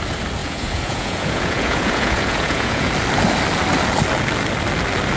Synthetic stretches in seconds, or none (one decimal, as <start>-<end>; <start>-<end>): 0.4-2.9